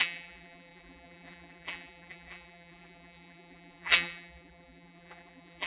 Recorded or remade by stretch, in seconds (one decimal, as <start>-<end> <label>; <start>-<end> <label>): 0.0-5.7 remade